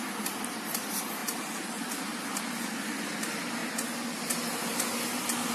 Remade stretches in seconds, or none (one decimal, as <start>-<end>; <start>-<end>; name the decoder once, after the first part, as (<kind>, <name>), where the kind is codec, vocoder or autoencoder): 0.0-3.6 (vocoder, BigVGAN v2); 4.6-5.5